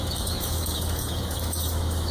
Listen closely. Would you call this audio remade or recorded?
remade